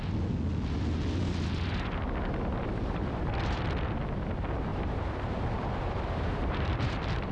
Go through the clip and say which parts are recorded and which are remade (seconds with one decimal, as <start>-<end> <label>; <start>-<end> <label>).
0.0-2.6 recorded; 2.6-3.3 remade; 3.3-4.7 recorded; 4.7-7.3 remade